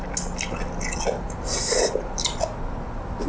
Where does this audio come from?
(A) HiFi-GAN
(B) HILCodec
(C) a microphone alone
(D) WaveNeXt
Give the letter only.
C